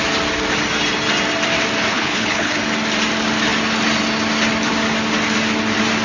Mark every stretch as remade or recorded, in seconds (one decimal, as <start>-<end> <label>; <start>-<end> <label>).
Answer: 0.0-1.9 recorded; 1.9-2.6 remade; 2.6-6.0 recorded